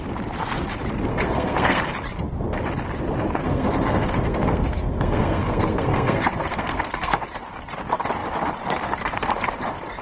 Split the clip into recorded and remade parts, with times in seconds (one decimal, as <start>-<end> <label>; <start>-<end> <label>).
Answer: 0.0-1.1 recorded; 1.1-1.8 remade; 1.8-3.4 recorded; 3.4-7.2 remade; 7.2-10.0 recorded